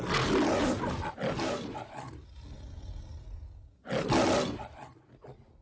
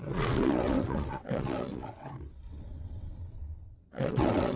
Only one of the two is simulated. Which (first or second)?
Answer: second